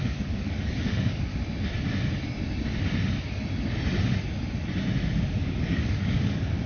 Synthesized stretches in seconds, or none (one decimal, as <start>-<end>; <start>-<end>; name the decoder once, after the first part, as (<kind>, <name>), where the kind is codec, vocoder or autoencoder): 0.0-1.3 (codec, DAC); 5.3-6.7